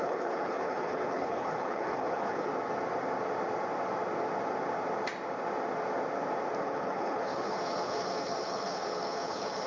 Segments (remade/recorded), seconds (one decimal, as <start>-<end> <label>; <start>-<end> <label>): 0.0-2.5 remade; 2.5-6.6 recorded; 6.6-9.7 remade